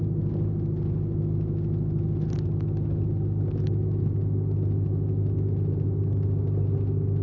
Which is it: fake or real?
real